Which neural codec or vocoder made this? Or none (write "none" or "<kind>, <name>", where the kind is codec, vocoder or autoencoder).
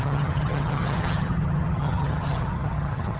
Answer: vocoder, HiFi-GAN